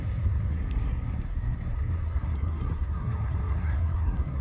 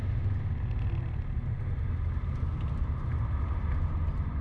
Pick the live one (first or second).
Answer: second